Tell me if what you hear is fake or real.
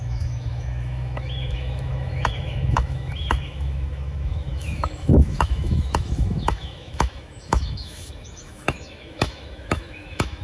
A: fake